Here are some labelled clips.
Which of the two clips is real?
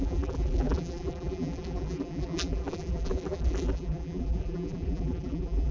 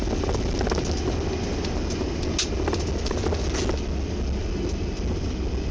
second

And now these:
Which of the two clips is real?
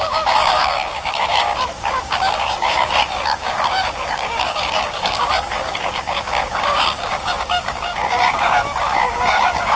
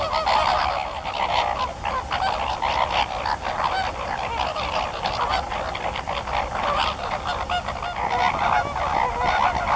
second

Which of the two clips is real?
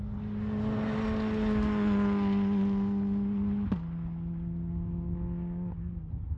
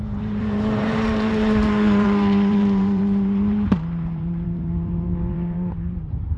first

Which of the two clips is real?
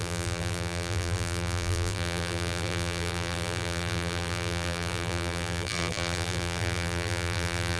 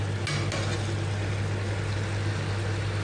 second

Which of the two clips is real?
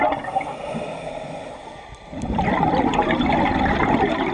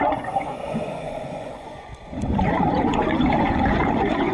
first